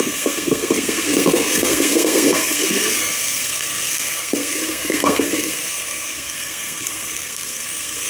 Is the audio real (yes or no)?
no